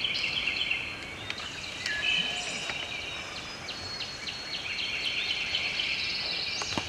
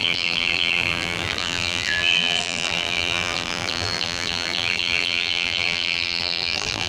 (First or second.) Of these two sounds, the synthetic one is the second